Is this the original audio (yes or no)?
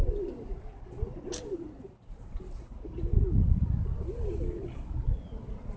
yes